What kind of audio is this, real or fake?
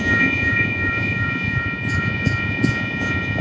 fake